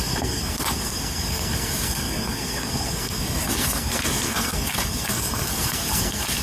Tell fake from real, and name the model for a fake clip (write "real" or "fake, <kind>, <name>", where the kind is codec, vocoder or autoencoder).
fake, codec, SNAC